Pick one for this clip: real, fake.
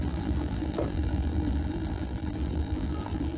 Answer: fake